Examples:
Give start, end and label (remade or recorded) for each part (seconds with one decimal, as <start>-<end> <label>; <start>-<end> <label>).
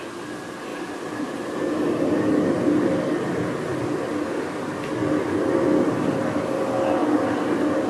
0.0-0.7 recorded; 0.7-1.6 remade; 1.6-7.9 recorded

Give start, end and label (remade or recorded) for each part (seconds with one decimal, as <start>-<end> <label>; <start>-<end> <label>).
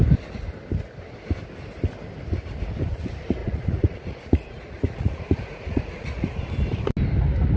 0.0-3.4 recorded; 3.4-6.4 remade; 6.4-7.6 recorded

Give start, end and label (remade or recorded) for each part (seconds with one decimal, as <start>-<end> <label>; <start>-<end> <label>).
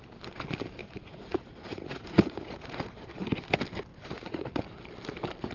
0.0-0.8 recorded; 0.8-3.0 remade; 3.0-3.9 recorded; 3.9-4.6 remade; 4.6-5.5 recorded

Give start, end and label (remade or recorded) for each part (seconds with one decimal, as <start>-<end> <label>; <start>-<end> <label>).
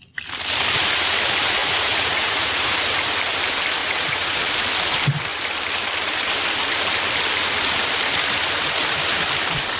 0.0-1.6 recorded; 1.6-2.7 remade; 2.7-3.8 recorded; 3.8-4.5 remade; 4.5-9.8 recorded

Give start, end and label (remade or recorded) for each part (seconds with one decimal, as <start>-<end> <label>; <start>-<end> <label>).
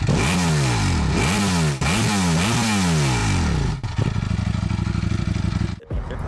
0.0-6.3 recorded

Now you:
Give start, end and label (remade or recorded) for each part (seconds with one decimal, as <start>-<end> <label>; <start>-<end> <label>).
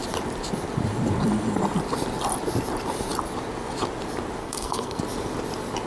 0.0-4.4 recorded; 4.4-5.0 remade; 5.0-5.9 recorded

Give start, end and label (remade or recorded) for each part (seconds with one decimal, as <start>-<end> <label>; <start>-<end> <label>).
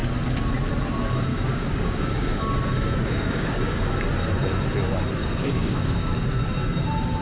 0.0-1.3 recorded; 1.3-3.9 remade; 3.9-5.2 recorded; 5.2-6.4 remade; 6.4-7.2 recorded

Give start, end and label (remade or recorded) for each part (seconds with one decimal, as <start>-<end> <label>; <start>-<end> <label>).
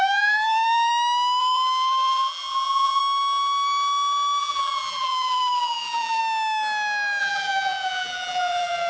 0.0-0.9 remade; 0.9-1.4 recorded; 1.4-3.0 remade; 3.0-4.4 recorded; 4.4-6.2 remade; 6.2-7.2 recorded; 7.2-8.9 remade